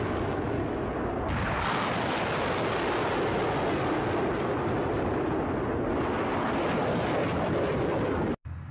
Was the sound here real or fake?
real